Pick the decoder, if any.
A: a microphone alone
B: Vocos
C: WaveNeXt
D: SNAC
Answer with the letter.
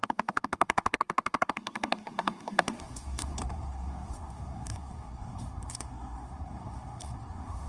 D